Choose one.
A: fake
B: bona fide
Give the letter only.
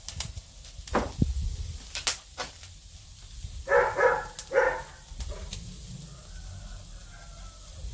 B